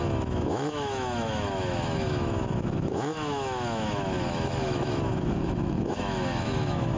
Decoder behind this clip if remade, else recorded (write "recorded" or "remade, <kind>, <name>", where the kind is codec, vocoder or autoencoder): remade, autoencoder, DAC-VAE